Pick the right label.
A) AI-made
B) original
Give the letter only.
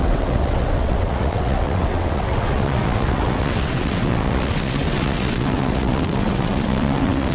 A